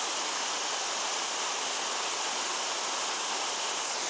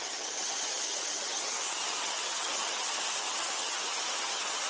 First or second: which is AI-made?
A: second